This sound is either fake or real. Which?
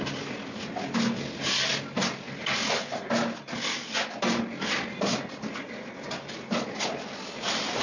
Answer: real